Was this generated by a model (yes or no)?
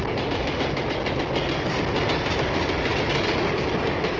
no